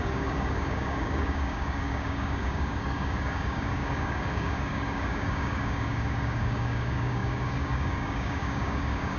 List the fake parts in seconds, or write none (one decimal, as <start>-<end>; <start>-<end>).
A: 0.0-9.2